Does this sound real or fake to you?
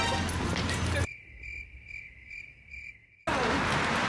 real